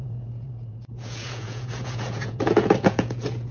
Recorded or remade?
remade